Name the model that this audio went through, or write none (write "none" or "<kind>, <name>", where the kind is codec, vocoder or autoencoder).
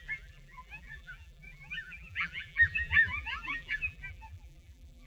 vocoder, BigVGAN v2